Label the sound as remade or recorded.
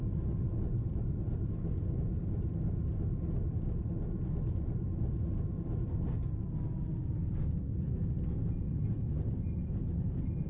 recorded